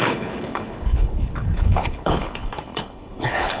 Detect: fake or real fake